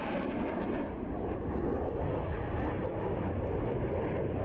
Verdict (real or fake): real